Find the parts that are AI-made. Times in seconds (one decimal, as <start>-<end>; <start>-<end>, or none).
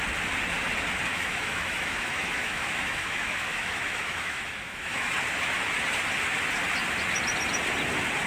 1.1-5.1